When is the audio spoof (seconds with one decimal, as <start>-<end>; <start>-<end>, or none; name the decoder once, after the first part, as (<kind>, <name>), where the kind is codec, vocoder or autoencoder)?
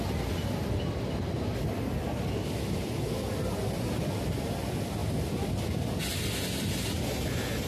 1.5-2.3 (vocoder, BigVGAN v2); 5.0-6.0